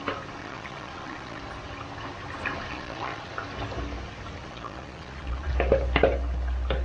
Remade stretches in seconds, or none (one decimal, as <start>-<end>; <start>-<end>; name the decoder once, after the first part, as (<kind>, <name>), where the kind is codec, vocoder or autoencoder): 0.4-1.4 (vocoder, Vocos); 2.7-3.3; 4.4-5.5

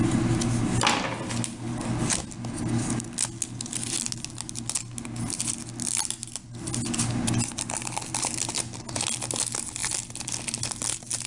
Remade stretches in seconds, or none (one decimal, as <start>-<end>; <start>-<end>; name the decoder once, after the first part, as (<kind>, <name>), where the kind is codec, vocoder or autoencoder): none

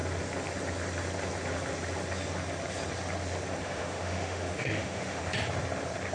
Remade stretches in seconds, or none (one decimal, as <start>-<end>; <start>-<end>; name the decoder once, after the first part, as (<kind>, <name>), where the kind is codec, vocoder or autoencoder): 3.6-5.2 (autoencoder, DAC-VAE)

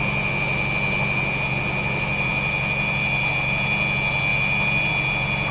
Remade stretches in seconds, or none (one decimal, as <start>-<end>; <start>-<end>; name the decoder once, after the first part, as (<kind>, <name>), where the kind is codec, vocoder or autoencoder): none

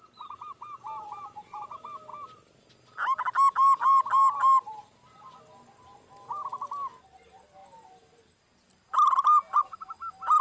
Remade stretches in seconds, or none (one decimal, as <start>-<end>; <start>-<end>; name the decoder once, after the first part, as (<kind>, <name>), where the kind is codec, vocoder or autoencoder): none

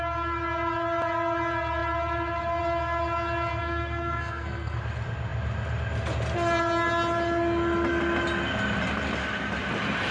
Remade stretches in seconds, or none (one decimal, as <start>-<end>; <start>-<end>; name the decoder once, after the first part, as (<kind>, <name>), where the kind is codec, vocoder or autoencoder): 3.6-4.8 (codec, SNAC)

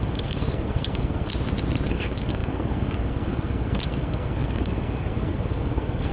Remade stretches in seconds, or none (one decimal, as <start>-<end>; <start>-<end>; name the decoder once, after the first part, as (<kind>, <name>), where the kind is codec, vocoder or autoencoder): 0.0-1.3 (codec, SNAC); 1.9-6.1

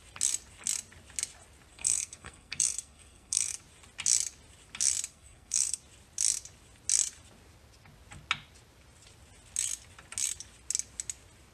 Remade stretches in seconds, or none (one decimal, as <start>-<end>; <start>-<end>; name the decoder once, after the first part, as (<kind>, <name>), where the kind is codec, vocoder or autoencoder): 1.7-3.6 (codec, SNAC); 5.1-5.8